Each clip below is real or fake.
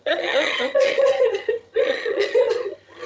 fake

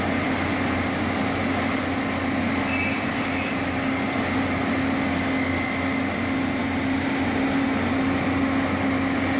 real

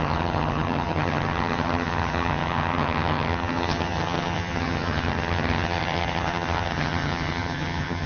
fake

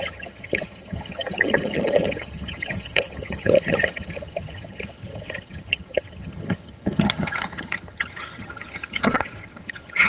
fake